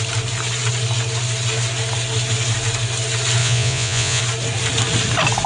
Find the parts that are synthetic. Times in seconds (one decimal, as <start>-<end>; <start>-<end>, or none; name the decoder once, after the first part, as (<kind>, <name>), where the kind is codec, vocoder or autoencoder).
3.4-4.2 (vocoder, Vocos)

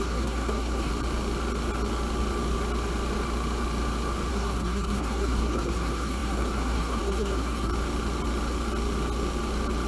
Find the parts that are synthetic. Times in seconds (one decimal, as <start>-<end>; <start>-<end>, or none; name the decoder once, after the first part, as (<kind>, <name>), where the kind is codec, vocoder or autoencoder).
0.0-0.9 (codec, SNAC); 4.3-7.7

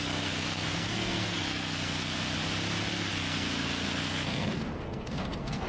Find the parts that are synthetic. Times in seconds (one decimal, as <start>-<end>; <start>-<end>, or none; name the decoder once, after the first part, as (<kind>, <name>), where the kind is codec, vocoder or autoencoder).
0.0-2.3 (codec, SNAC); 2.9-5.7